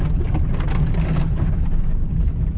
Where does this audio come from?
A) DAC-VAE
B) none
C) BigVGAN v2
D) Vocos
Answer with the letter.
B